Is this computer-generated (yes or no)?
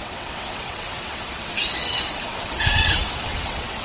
yes